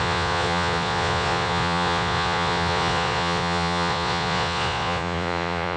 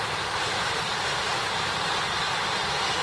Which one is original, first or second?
second